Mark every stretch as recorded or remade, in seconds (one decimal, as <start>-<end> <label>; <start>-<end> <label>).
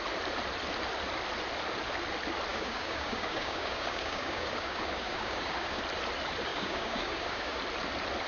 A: 0.0-2.5 recorded; 2.5-5.8 remade; 5.8-6.5 recorded; 6.5-7.6 remade; 7.6-8.3 recorded